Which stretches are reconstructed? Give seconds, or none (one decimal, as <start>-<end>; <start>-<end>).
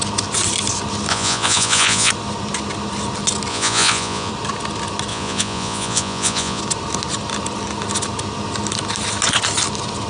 1.1-2.1; 3.5-4.3; 5.1-6.6